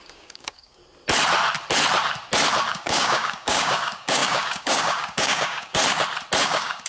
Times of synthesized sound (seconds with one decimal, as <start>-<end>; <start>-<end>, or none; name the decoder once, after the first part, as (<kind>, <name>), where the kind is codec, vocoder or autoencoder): 0.0-0.8 (codec, DAC); 2.7-5.8; 6.4-6.9